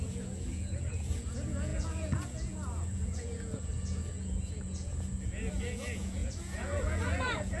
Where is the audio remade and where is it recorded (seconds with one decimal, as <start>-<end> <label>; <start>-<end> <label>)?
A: 0.0-7.6 remade